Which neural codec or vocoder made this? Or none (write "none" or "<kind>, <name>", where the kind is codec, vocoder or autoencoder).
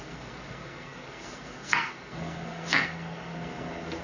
codec, SNAC